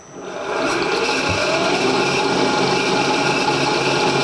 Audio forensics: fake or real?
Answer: real